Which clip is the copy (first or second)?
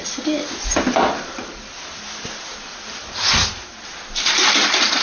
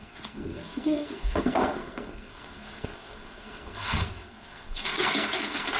second